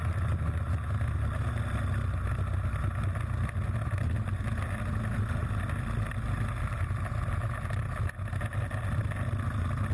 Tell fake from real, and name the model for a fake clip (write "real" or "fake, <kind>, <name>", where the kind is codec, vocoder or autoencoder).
real